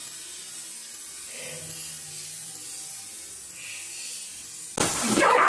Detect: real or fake real